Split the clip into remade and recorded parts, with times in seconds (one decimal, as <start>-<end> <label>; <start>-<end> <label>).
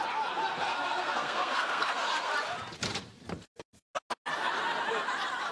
0.0-0.7 recorded; 0.7-2.3 remade; 2.3-5.5 recorded